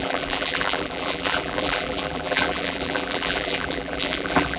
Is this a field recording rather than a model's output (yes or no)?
no